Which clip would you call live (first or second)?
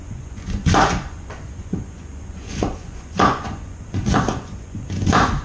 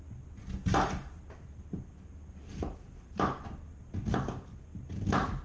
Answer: second